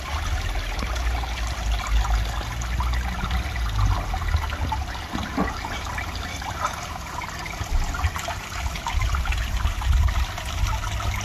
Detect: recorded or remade recorded